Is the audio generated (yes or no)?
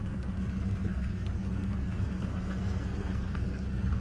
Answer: yes